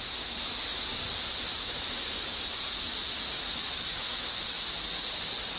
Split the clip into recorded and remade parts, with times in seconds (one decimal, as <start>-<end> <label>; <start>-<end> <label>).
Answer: 0.0-1.5 recorded; 1.5-4.9 remade; 4.9-5.6 recorded